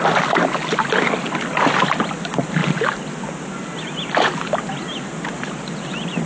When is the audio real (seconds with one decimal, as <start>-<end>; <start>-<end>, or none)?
0.0-6.3